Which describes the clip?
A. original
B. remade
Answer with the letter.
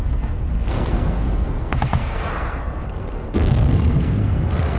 B